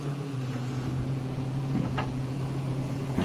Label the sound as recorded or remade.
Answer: remade